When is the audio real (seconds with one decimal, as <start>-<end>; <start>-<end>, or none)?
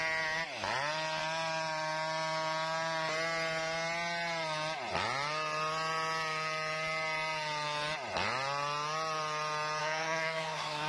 0.0-9.8